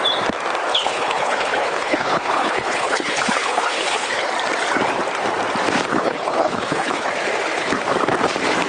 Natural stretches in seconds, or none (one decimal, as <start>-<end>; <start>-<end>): 0.0-0.7; 4.3-5.9; 7.1-8.7